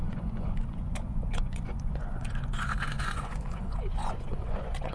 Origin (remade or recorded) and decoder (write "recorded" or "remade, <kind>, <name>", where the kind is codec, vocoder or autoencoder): remade, vocoder, Vocos